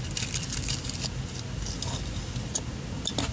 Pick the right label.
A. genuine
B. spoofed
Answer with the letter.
A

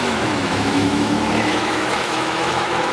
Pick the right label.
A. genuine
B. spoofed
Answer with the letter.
B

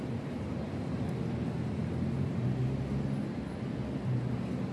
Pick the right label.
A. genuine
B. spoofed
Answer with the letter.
A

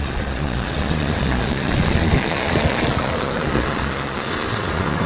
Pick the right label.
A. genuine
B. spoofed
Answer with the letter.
B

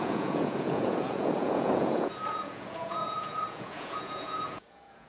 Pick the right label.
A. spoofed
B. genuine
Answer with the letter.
A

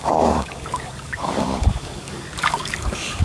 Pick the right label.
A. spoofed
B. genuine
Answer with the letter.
A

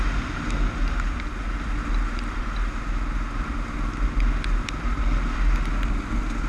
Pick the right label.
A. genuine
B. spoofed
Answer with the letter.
A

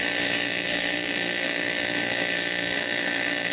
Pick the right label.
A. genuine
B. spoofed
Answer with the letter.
B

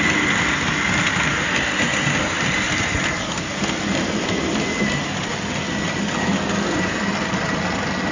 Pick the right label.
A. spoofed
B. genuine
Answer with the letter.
B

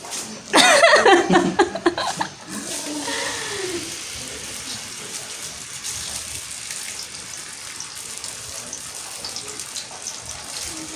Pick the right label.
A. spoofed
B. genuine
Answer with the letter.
B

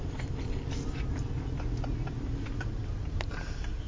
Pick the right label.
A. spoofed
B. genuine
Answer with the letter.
B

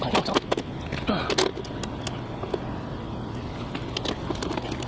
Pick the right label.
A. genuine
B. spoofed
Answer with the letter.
A